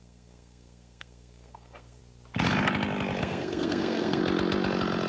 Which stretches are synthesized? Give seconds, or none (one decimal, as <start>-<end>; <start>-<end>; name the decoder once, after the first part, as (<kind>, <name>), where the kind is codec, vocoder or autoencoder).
0.0-2.0 (codec, SNAC); 3.2-4.2